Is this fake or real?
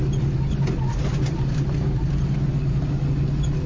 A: real